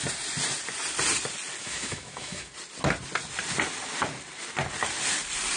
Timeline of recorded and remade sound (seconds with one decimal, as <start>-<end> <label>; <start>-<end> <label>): 0.0-1.6 recorded; 1.6-2.5 remade; 2.5-5.6 recorded